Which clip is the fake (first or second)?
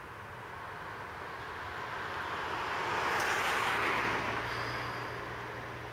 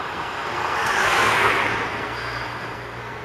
second